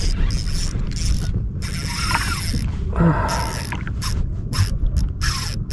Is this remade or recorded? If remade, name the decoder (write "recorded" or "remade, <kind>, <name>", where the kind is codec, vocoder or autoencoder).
recorded